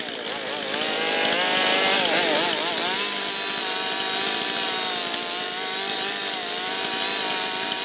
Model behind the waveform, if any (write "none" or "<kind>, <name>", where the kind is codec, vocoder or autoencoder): none